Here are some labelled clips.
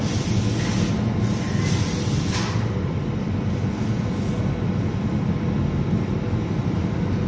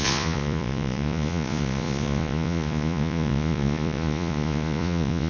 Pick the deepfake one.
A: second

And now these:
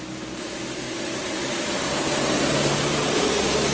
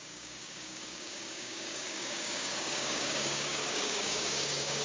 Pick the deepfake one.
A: second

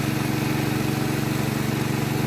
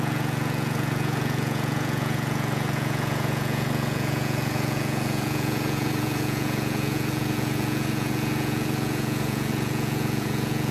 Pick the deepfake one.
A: second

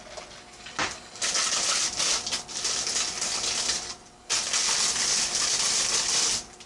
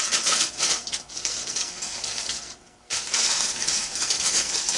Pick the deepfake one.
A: second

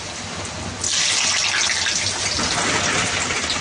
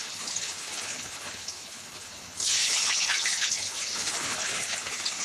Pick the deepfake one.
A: second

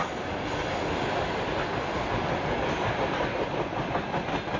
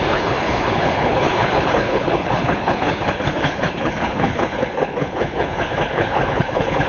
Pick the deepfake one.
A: second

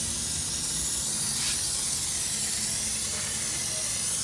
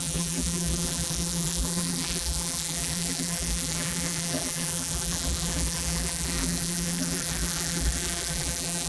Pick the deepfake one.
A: second